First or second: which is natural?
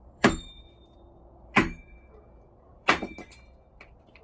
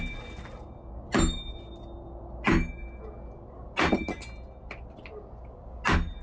second